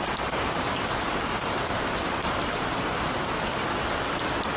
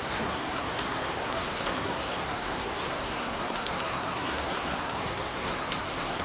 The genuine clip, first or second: first